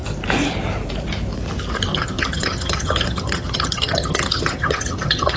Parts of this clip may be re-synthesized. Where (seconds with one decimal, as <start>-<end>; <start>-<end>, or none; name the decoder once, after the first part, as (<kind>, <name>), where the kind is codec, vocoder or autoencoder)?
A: 1.9-5.4 (vocoder, HiFi-GAN)